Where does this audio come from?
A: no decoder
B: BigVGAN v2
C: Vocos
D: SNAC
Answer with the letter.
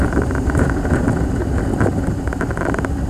A